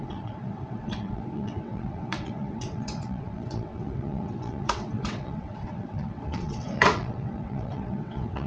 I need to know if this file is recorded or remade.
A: remade